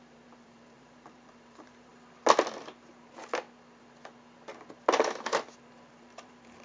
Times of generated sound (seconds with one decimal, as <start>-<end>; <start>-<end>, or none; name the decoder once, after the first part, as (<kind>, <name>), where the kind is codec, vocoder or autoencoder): 0.0-1.9 (vocoder, BigVGAN v2); 5.9-6.6